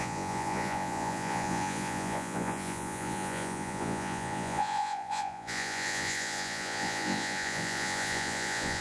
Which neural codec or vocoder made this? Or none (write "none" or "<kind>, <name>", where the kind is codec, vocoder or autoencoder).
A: vocoder, Vocos